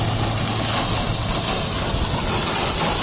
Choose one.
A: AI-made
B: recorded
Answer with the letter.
B